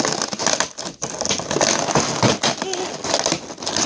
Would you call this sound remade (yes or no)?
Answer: no